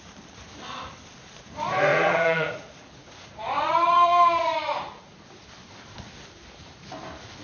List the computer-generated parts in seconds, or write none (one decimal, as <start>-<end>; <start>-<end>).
1.9-5.2